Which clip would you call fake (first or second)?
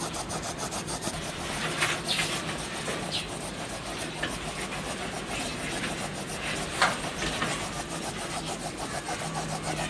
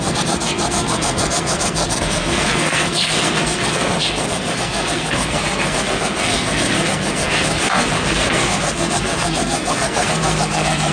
second